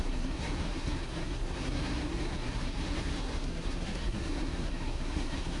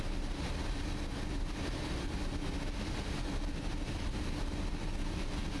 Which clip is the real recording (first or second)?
second